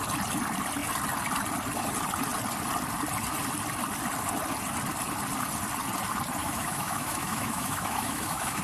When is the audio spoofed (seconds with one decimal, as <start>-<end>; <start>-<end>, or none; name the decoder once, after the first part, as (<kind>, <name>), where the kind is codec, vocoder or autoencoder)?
6.4-8.6 (autoencoder, DAC-VAE)